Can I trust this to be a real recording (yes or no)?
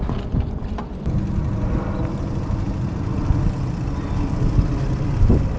yes